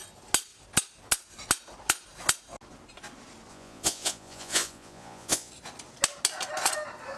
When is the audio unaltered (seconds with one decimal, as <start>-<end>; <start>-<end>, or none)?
0.0-3.5; 5.5-7.2